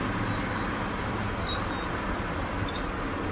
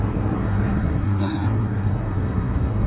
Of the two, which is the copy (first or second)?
second